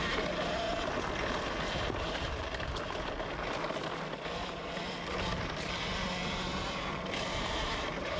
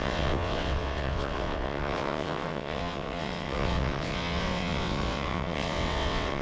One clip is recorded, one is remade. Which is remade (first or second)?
second